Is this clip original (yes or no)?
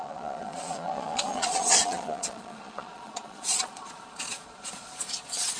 no